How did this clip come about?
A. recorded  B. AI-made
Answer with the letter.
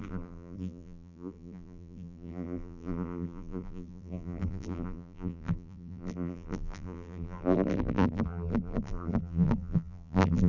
B